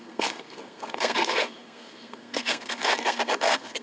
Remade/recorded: remade